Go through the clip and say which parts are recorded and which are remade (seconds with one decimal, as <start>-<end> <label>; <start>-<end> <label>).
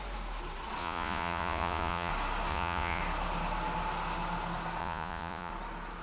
0.0-0.8 recorded; 0.8-2.1 remade; 2.1-2.5 recorded; 2.5-3.0 remade; 3.0-4.8 recorded; 4.8-5.5 remade; 5.5-6.0 recorded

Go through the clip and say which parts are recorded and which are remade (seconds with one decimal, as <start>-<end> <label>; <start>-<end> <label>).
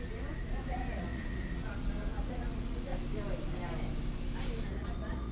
0.0-2.9 remade; 2.9-4.7 recorded; 4.7-5.3 remade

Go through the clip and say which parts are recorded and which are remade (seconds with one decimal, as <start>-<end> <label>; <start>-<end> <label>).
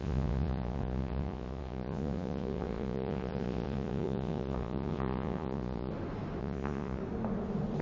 0.0-5.9 remade; 5.9-6.4 recorded; 6.4-7.0 remade; 7.0-7.8 recorded